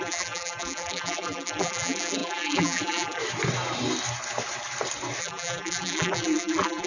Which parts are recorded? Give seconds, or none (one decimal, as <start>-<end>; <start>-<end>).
3.2-5.2